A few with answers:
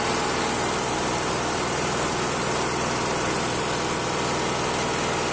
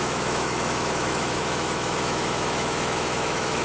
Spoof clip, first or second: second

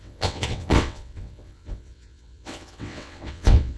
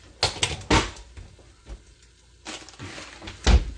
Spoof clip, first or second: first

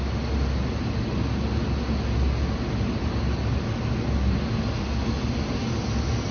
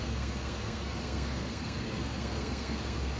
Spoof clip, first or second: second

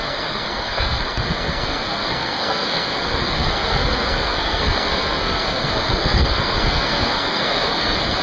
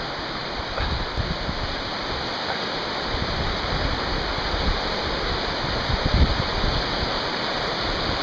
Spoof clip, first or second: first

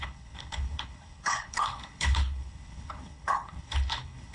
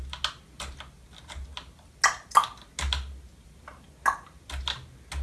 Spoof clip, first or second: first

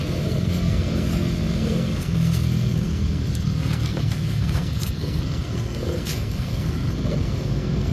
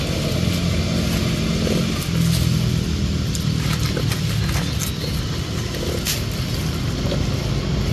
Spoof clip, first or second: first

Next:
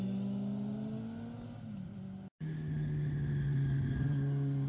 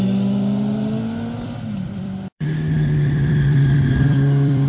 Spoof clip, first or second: second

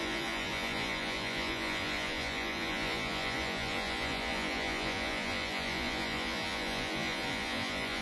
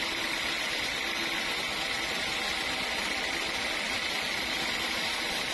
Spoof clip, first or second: first